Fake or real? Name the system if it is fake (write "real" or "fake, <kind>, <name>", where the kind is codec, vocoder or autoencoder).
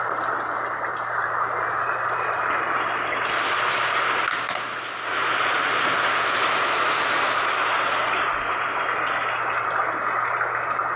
real